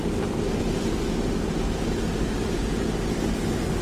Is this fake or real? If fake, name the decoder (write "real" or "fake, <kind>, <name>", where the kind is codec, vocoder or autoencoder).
real